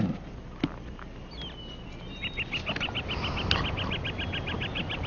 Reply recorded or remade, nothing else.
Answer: recorded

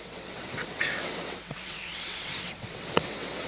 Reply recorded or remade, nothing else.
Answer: remade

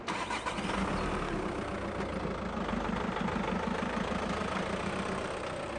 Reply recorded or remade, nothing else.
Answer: recorded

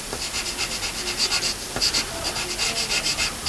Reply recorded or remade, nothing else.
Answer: recorded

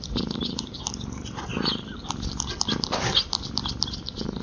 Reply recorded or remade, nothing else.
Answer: recorded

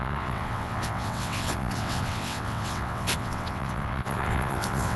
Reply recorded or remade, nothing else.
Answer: remade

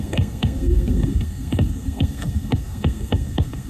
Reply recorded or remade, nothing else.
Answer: remade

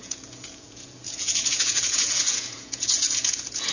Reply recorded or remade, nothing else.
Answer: remade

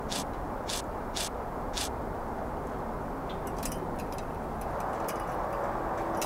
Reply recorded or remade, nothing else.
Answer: recorded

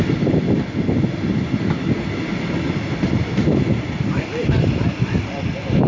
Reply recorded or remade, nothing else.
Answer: recorded